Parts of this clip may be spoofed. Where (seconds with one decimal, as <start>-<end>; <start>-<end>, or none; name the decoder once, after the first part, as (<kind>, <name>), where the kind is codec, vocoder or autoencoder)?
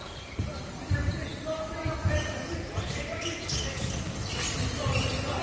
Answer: none